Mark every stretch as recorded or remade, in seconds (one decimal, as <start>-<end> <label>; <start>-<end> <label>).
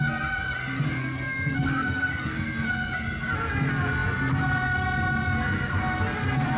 0.0-1.0 recorded; 1.0-2.7 remade; 2.7-6.6 recorded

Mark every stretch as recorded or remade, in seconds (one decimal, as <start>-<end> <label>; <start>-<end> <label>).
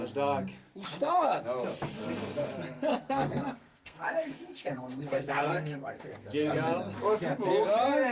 0.0-0.8 recorded; 0.8-1.4 remade; 1.4-2.9 recorded; 2.9-6.5 remade; 6.5-8.1 recorded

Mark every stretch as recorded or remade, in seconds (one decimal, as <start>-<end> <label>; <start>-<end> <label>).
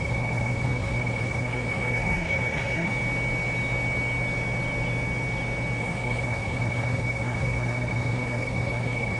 0.0-2.9 remade; 2.9-5.8 recorded; 5.8-9.2 remade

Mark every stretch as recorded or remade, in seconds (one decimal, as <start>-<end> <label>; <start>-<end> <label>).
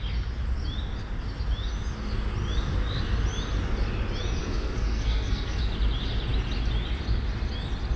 0.0-4.4 recorded; 4.4-5.6 remade; 5.6-8.0 recorded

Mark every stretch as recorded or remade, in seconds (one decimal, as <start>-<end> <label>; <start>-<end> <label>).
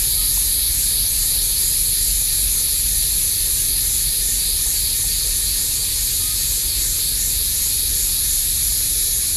0.0-9.4 recorded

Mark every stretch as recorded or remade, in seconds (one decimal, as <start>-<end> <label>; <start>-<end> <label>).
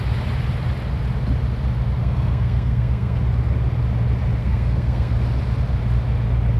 0.0-2.0 recorded; 2.0-3.2 remade; 3.2-4.4 recorded; 4.4-5.1 remade; 5.1-6.6 recorded